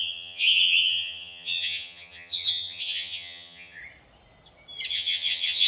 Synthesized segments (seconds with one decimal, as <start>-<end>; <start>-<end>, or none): 0.0-3.8; 4.9-5.7